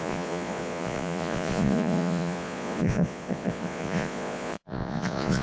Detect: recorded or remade remade